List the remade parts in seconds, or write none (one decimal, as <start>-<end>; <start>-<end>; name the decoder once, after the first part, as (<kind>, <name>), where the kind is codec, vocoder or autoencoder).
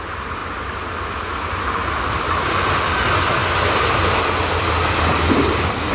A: none